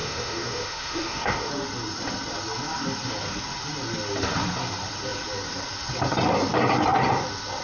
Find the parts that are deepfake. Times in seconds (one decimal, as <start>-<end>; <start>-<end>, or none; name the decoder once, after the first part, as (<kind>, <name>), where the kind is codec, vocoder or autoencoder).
0.0-1.5 (autoencoder, DAC-VAE)